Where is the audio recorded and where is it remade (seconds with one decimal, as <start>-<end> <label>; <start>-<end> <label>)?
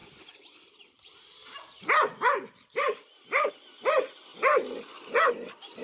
0.0-5.8 recorded